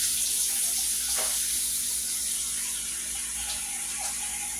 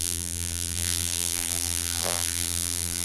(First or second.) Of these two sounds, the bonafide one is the first